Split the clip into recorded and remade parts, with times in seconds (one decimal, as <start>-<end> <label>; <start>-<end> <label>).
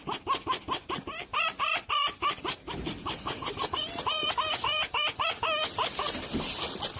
0.0-1.3 recorded; 1.3-5.3 remade; 5.3-7.0 recorded